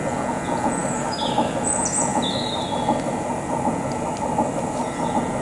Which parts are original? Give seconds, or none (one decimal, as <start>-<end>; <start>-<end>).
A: 0.0-0.8; 1.5-5.4